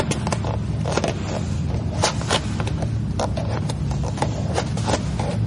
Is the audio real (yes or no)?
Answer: yes